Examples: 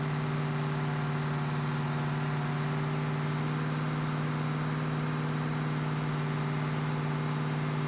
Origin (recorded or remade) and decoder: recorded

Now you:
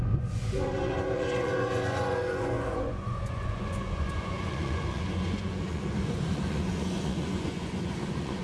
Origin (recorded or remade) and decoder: remade, vocoder, Vocos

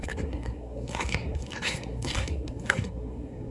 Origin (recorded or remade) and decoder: remade, codec, SNAC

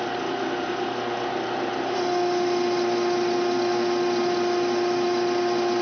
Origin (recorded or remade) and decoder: recorded